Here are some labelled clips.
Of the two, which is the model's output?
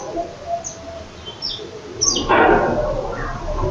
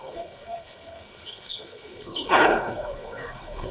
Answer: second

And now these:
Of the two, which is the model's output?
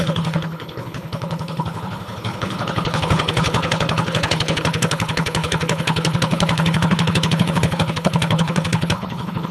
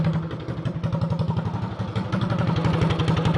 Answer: first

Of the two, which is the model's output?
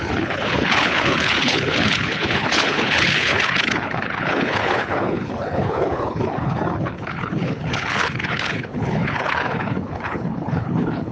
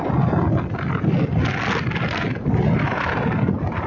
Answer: first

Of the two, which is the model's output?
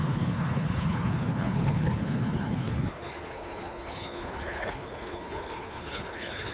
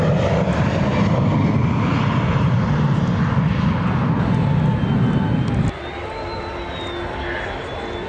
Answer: first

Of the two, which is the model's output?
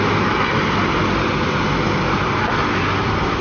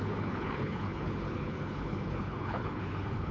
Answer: second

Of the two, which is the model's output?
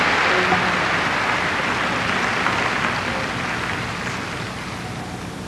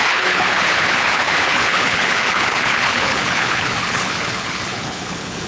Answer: second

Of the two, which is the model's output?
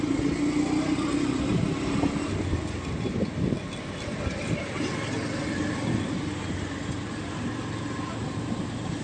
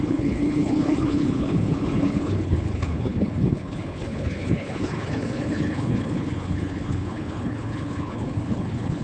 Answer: second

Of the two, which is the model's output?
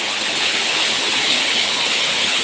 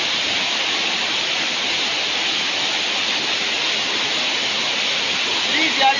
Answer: first